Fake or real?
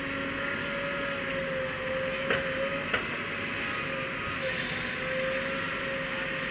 real